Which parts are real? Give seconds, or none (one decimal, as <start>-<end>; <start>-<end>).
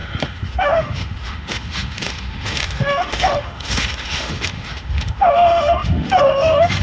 none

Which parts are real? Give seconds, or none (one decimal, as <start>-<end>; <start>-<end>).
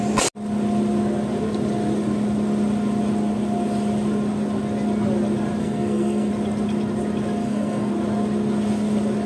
0.0-5.6; 6.3-7.4; 7.9-9.3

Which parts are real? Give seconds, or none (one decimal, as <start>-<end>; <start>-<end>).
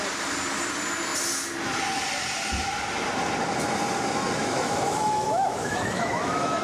0.0-4.4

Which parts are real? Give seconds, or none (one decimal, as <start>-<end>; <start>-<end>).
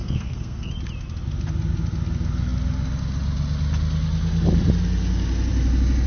0.7-6.1